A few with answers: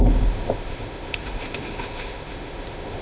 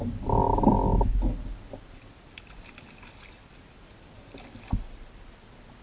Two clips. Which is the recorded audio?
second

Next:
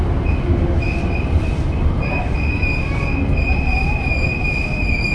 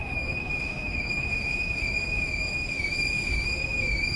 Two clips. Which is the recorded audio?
first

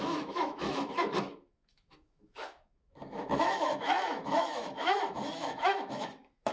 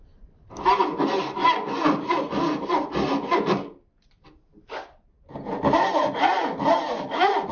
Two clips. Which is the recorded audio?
second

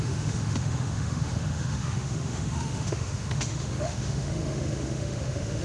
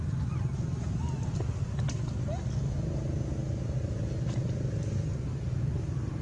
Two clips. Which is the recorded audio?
second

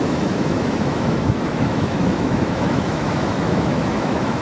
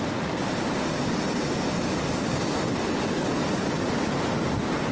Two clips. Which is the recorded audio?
second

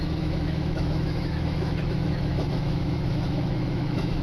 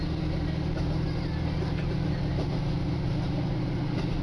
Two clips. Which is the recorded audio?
second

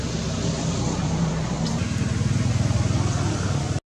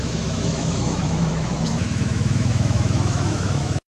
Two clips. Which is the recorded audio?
first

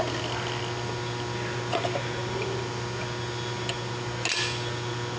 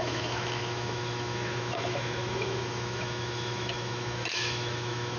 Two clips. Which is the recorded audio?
first